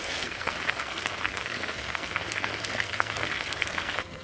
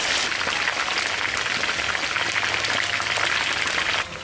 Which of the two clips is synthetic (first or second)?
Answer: first